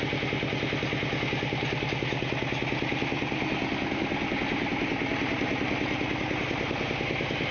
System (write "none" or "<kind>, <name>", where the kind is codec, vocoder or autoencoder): none